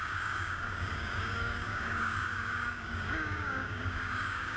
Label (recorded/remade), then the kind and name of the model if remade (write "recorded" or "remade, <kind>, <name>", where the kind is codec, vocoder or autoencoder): remade, codec, DAC